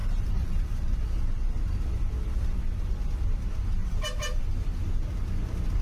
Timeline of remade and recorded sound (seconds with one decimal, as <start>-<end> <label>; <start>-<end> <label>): 0.0-0.8 remade; 0.8-3.8 recorded; 3.8-4.4 remade; 4.4-5.8 recorded